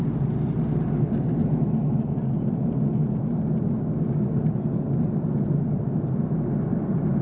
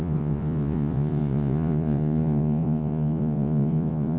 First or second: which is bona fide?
first